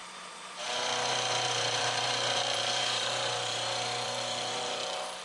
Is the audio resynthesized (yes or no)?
yes